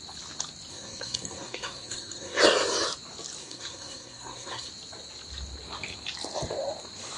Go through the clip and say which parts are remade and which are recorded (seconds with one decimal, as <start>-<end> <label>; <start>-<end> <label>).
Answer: 0.0-0.7 recorded; 0.7-2.4 remade; 2.4-3.4 recorded; 3.4-4.7 remade; 4.7-7.2 recorded